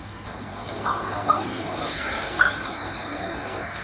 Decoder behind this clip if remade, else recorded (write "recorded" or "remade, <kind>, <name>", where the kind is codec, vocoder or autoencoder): remade, codec, SNAC